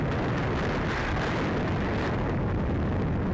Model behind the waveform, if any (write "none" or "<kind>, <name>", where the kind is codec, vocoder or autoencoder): none